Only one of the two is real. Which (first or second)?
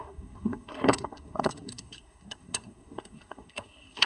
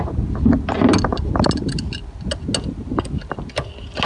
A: second